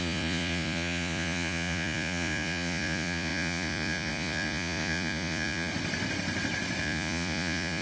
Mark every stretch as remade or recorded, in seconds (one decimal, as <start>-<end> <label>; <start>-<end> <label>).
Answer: 0.0-5.7 remade; 5.7-6.8 recorded; 6.8-7.8 remade